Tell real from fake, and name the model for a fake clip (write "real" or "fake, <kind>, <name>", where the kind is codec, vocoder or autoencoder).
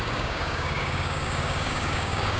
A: fake, codec, DAC